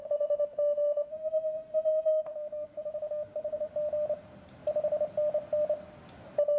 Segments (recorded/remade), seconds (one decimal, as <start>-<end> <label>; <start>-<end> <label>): 0.0-3.7 remade; 3.7-6.6 recorded